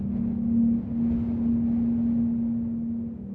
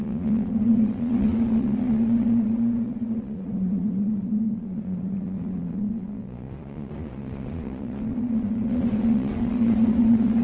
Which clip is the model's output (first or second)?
second